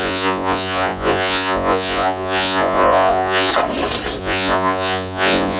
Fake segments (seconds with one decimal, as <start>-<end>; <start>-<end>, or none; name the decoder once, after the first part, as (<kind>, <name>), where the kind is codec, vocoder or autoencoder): 0.0-3.5 (vocoder, Vocos); 4.2-5.6